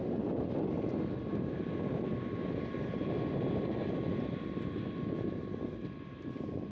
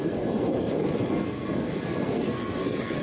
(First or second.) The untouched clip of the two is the first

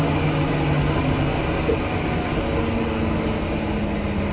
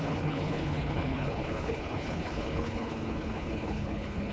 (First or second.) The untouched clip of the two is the first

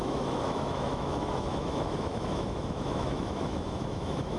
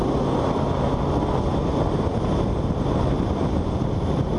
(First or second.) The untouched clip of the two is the second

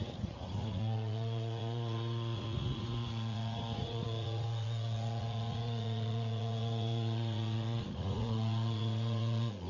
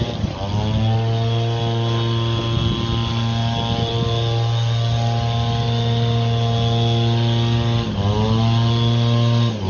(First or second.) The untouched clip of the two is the second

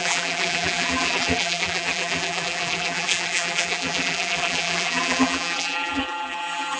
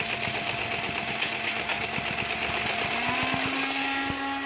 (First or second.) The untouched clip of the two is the second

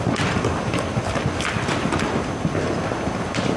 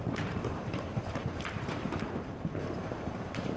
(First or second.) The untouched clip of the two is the first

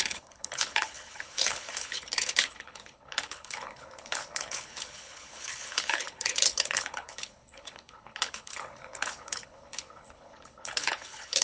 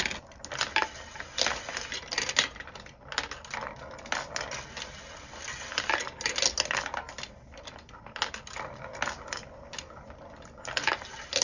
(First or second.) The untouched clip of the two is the second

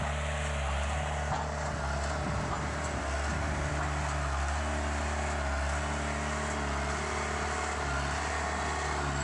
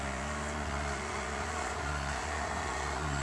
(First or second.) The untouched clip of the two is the first